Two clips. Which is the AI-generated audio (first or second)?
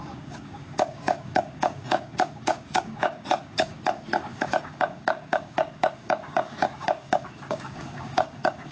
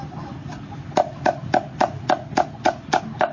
first